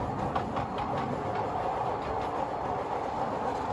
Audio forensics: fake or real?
real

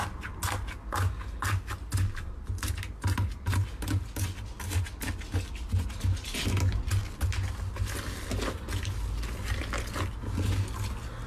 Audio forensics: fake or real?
real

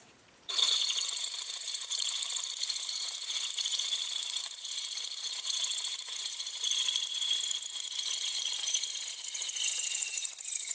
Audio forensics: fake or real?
fake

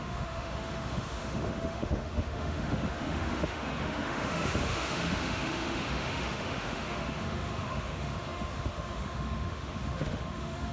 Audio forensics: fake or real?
fake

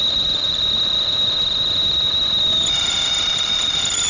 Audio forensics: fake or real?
real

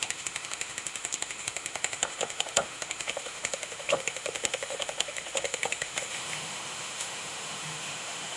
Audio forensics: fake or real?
fake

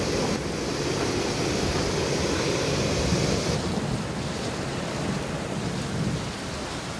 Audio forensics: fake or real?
real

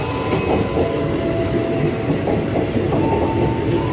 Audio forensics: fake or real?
real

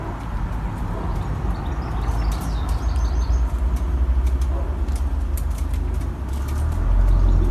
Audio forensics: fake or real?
real